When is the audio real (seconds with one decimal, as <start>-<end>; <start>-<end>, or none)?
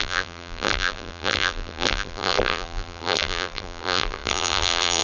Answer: none